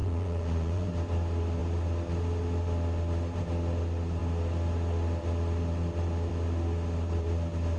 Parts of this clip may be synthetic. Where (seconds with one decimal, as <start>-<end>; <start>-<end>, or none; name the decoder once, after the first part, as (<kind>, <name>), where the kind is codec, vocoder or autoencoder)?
0.0-0.9 (vocoder, Vocos)